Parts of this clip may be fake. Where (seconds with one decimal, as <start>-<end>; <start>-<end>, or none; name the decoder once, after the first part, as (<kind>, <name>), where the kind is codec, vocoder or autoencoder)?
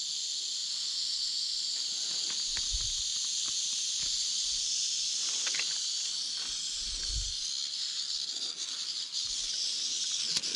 none